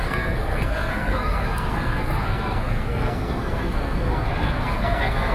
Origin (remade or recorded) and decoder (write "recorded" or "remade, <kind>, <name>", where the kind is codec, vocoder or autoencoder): remade, codec, SNAC